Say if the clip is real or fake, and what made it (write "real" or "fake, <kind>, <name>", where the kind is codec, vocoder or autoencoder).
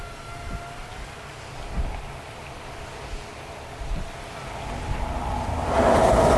real